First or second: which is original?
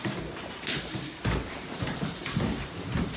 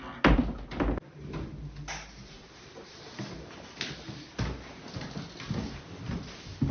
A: second